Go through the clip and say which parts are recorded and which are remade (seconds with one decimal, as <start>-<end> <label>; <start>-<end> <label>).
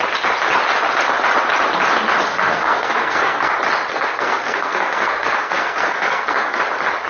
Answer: 0.0-2.3 recorded; 2.3-3.5 remade; 3.5-3.9 recorded; 3.9-6.6 remade; 6.6-7.1 recorded